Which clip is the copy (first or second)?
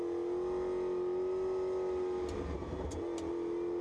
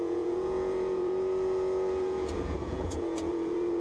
second